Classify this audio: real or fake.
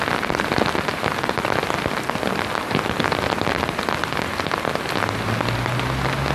real